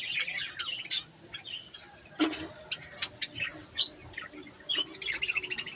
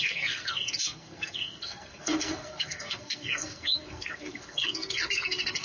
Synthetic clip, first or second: second